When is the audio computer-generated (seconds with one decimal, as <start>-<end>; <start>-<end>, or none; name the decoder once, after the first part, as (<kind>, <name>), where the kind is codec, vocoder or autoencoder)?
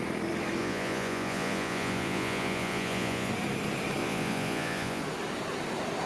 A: 0.6-3.3 (vocoder, Vocos); 4.0-5.0